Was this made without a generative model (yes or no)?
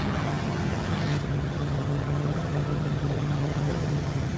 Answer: no